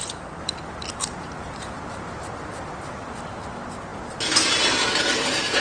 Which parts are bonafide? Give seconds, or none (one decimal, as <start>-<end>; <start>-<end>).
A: 3.4-5.6